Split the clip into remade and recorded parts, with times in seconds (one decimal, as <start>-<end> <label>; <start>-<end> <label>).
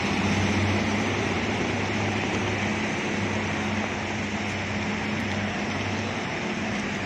0.0-0.9 recorded; 0.9-2.4 remade; 2.4-4.9 recorded; 4.9-6.3 remade; 6.3-7.1 recorded